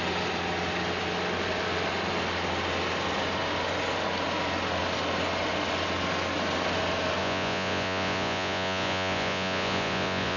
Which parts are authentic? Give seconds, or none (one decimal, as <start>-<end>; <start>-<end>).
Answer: 0.0-7.2